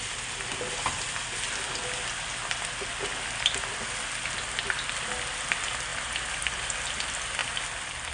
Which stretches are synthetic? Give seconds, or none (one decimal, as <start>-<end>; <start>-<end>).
none